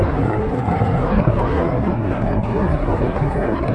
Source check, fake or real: fake